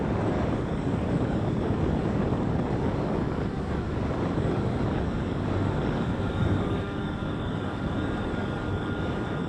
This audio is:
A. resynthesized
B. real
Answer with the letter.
A